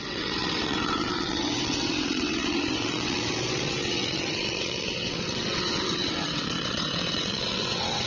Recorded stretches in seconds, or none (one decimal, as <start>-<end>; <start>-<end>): none